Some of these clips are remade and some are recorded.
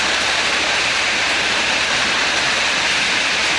remade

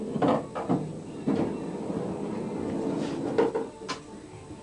recorded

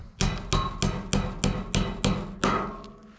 recorded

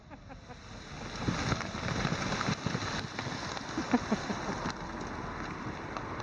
recorded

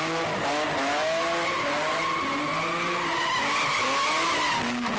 recorded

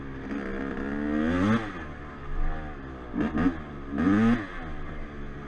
recorded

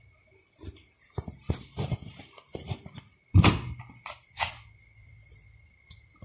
remade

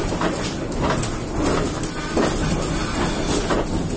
recorded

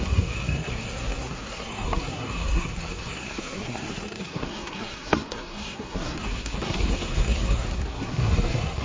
remade